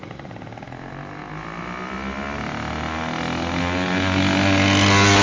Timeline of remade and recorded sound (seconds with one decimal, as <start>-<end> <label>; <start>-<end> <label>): 0.0-5.2 recorded